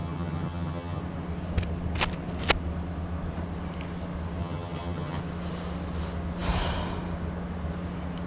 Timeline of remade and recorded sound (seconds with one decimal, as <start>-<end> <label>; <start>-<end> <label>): 0.0-1.0 remade; 1.0-4.4 recorded; 4.4-5.2 remade; 5.2-8.3 recorded